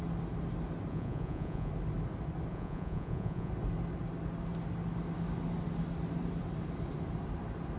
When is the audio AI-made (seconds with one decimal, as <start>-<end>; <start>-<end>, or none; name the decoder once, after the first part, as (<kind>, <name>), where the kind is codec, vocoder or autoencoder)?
0.9-1.7 (vocoder, Vocos); 2.5-3.5